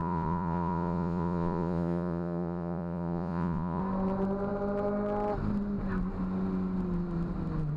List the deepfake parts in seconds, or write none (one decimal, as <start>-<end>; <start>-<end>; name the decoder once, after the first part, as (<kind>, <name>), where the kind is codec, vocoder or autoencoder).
0.0-3.8 (vocoder, Vocos)